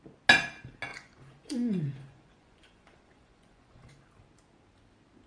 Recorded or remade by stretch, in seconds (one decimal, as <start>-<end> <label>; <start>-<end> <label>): 0.0-0.9 recorded; 0.9-3.9 remade; 3.9-5.3 recorded